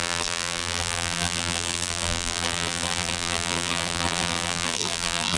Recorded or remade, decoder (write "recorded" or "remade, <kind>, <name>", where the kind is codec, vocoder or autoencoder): remade, vocoder, BigVGAN v2